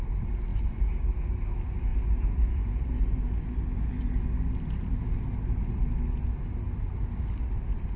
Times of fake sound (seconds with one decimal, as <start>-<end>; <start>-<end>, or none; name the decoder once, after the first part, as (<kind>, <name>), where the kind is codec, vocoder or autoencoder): 0.5-1.1 (vocoder, BigVGAN v2); 1.9-3.2